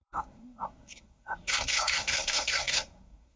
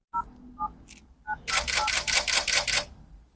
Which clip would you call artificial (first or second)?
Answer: first